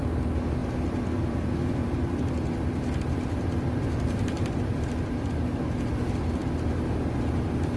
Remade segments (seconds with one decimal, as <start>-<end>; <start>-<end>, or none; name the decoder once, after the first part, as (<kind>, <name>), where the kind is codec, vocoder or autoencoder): 0.6-5.3 (vocoder, BigVGAN v2)